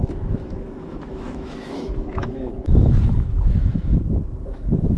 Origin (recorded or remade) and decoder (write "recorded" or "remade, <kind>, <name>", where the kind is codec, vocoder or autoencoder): remade, autoencoder, DAC-VAE